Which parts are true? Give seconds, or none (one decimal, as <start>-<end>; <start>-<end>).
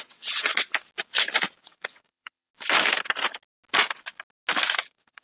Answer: 0.5-1.6; 2.5-4.8